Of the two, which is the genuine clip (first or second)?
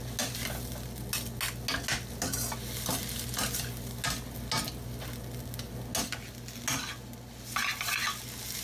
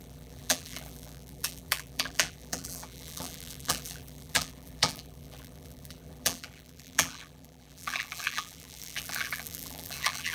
first